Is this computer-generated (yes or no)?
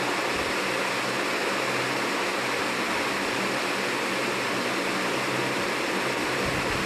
no